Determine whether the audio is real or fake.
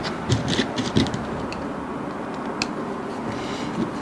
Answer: real